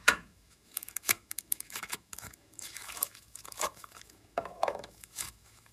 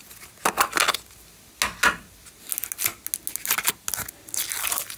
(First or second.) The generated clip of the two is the first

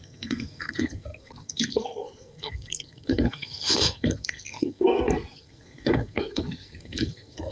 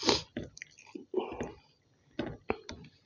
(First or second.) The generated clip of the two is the first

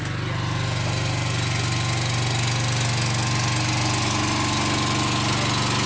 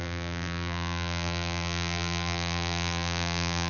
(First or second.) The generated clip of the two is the second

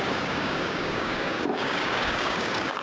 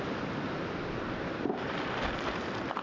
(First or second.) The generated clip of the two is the first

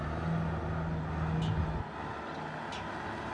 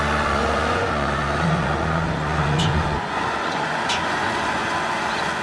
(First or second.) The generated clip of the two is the second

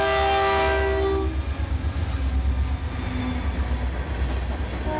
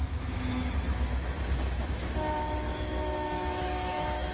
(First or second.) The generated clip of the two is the second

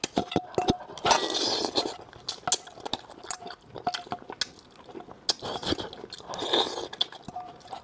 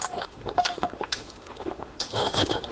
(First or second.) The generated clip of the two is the second